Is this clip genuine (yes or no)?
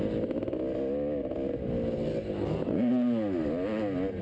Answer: yes